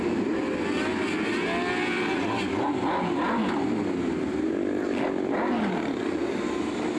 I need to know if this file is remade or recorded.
recorded